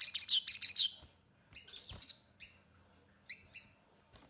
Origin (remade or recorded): recorded